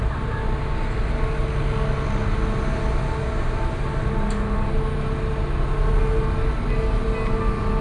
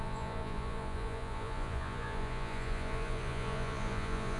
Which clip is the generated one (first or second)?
second